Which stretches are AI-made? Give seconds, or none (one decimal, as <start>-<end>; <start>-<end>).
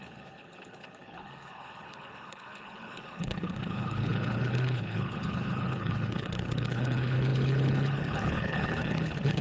0.0-9.4